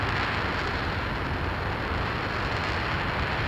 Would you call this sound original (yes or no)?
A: yes